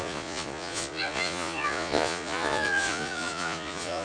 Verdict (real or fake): fake